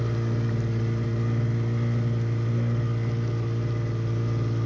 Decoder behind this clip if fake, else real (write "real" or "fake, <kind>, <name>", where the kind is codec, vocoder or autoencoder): real